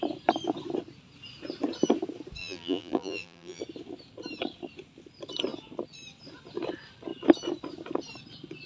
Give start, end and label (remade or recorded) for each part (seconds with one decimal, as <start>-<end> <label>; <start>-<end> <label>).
0.0-2.4 recorded; 2.4-3.6 remade; 3.6-8.7 recorded